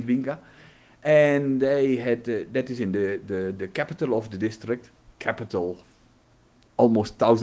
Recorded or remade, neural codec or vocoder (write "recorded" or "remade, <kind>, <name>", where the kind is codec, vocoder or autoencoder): remade, autoencoder, DAC-VAE